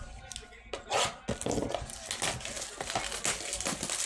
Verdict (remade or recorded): recorded